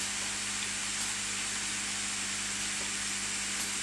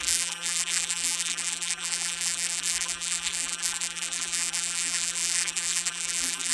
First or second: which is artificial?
second